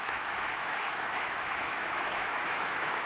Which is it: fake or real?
fake